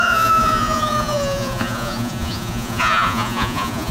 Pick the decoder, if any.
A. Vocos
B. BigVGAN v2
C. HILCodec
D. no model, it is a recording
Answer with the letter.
A